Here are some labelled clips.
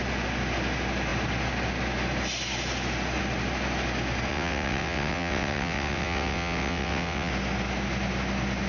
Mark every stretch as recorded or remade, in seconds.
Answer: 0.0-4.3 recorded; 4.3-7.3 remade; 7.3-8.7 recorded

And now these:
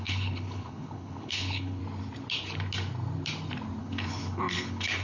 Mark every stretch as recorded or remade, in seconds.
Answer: 0.0-1.8 remade; 1.8-3.8 recorded; 3.8-5.0 remade

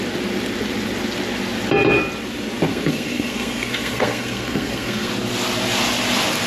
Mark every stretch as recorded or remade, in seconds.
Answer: 0.0-2.7 recorded; 2.7-5.1 remade; 5.1-6.5 recorded

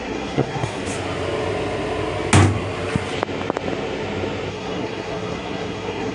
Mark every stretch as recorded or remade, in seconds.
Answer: 0.0-0.8 remade; 0.8-4.5 recorded; 4.5-6.1 remade

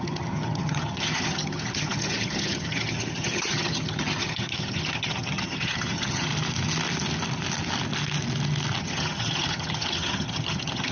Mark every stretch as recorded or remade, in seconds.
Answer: 0.0-6.3 remade; 6.3-8.8 recorded; 8.8-10.9 remade

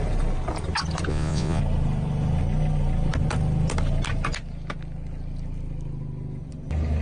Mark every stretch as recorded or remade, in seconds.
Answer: 0.0-1.1 recorded; 1.1-1.6 remade; 1.6-7.0 recorded

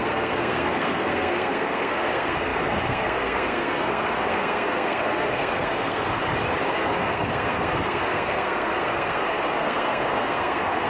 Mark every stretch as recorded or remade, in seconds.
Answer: 0.0-6.2 remade; 6.2-6.7 recorded; 6.7-10.9 remade

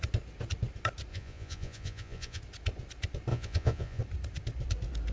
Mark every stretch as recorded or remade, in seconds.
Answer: 0.0-1.1 recorded; 1.1-2.4 remade; 2.4-3.3 recorded; 3.3-4.0 remade; 4.0-5.1 recorded